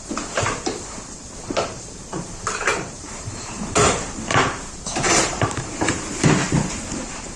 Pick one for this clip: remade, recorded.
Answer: remade